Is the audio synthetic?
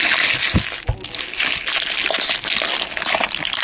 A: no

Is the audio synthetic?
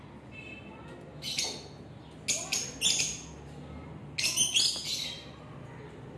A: no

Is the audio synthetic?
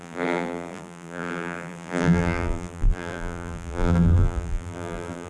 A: yes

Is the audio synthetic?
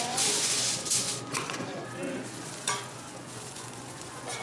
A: yes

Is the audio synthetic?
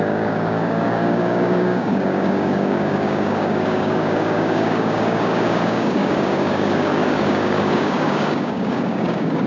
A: yes